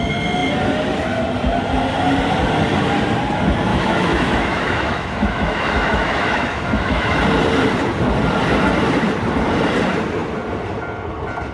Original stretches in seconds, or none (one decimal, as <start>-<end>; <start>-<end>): 0.0-3.7; 7.2-11.5